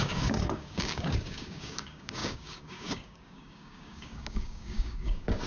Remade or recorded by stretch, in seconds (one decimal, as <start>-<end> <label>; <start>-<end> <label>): 0.0-5.5 remade